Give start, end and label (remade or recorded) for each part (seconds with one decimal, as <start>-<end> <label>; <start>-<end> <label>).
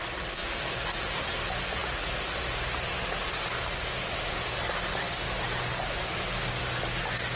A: 0.0-7.4 recorded